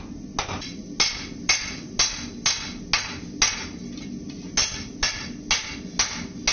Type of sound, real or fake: real